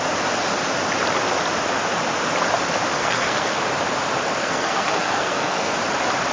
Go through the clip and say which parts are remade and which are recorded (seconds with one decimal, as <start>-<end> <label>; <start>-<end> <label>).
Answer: 0.0-3.0 recorded; 3.0-3.6 remade; 3.6-4.4 recorded; 4.4-5.7 remade; 5.7-6.3 recorded